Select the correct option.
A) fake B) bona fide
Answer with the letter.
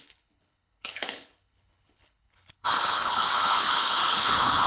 A